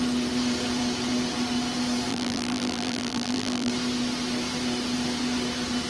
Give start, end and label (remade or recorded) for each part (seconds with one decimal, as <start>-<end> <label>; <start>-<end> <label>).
0.0-2.1 recorded; 2.1-3.7 remade; 3.7-5.9 recorded